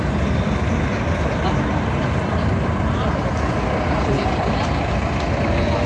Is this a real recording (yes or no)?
yes